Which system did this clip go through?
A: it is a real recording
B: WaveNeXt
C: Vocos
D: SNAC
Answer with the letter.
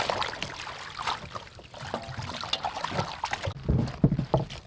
A